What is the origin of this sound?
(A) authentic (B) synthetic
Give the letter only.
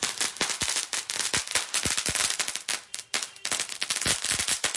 B